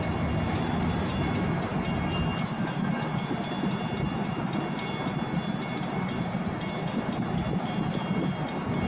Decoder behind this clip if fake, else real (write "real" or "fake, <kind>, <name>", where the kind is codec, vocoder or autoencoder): real